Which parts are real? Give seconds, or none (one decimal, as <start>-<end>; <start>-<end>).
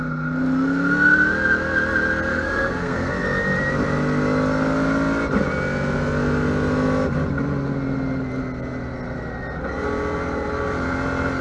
0.0-2.3; 3.1-11.4